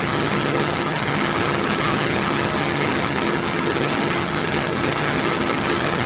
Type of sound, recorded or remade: remade